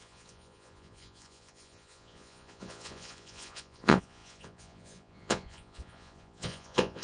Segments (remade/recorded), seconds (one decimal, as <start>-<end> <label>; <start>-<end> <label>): 0.0-7.0 remade